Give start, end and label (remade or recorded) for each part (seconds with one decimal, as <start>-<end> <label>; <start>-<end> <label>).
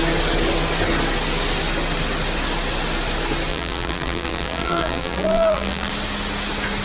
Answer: 0.0-3.5 recorded; 3.5-5.9 remade; 5.9-6.8 recorded